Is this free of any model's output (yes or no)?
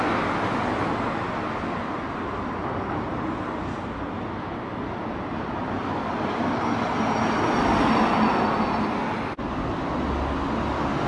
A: yes